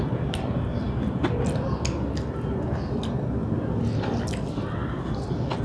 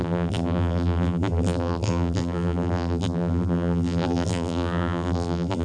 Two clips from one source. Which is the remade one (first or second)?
second